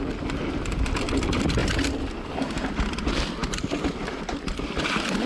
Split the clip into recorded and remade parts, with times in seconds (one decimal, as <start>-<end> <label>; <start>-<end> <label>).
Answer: 0.0-1.6 recorded; 1.6-2.6 remade; 2.6-3.4 recorded; 3.4-5.3 remade

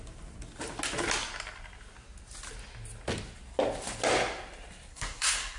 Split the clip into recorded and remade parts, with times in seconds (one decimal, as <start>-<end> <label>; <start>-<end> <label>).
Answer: 0.0-4.9 recorded; 4.9-5.6 remade

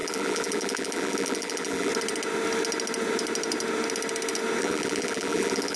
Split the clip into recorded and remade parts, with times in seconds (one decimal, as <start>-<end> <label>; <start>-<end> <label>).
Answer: 0.0-1.9 remade; 1.9-4.6 recorded; 4.6-5.8 remade

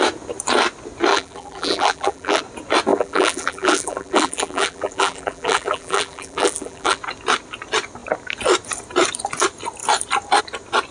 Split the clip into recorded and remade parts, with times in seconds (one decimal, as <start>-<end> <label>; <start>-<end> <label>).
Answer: 0.0-1.1 recorded; 1.1-2.4 remade; 2.4-2.9 recorded; 2.9-7.0 remade; 7.0-10.9 recorded

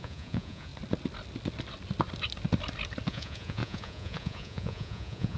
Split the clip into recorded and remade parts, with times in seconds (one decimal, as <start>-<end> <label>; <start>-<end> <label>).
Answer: 0.0-0.7 remade; 0.7-3.1 recorded; 3.1-5.4 remade

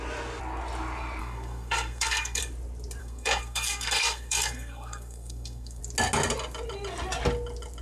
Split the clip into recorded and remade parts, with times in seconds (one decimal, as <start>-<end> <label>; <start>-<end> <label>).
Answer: 0.0-1.2 recorded; 1.2-2.4 remade; 2.4-3.0 recorded; 3.0-5.8 remade; 5.8-7.8 recorded

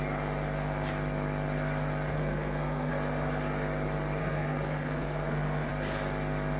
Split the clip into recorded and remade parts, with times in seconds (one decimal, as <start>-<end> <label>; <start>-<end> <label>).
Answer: 0.0-2.1 recorded; 2.1-2.9 remade; 2.9-4.2 recorded; 4.2-5.7 remade; 5.7-6.6 recorded